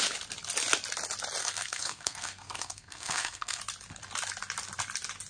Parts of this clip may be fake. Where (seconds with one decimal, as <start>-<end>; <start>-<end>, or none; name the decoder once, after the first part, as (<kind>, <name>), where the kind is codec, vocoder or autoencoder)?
1.4-3.6 (codec, SNAC)